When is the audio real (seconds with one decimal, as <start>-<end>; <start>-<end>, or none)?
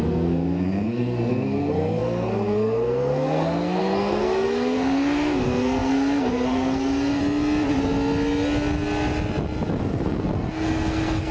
7.2-9.8